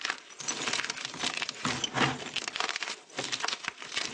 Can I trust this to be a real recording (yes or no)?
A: yes